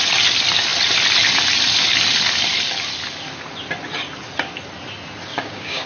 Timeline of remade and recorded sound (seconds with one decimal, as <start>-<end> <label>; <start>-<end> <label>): 0.0-5.3 recorded; 5.3-5.9 remade